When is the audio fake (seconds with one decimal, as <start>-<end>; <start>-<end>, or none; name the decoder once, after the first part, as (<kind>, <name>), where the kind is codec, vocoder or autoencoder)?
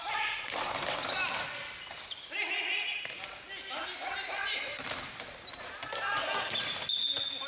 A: none